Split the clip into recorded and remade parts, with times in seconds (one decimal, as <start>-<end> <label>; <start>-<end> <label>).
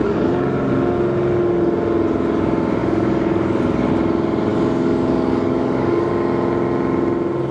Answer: 0.0-0.7 remade; 0.7-2.8 recorded; 2.8-3.9 remade; 3.9-4.5 recorded; 4.5-6.1 remade; 6.1-7.5 recorded